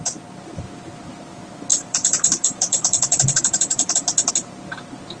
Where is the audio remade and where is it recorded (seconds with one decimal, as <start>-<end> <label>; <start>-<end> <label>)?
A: 0.0-1.7 recorded; 1.7-4.3 remade; 4.3-5.2 recorded